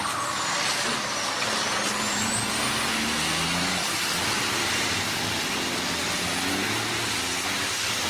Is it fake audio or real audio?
real